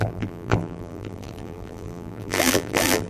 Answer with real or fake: fake